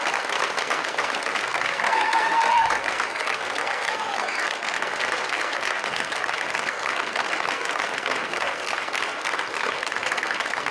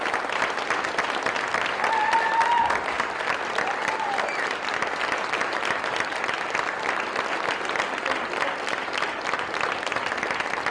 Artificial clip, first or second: first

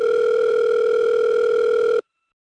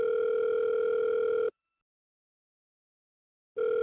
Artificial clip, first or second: first